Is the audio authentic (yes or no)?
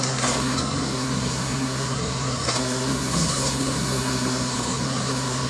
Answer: no